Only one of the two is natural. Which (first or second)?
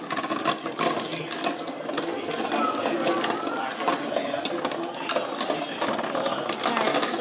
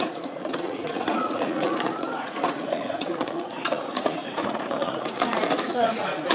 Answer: first